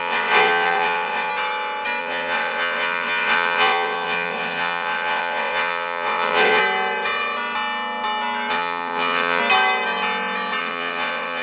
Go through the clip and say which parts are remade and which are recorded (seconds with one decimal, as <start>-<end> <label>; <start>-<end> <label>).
0.0-1.3 remade; 1.3-2.0 recorded; 2.0-6.6 remade; 6.6-8.5 recorded; 8.5-9.4 remade; 9.4-10.6 recorded; 10.6-11.4 remade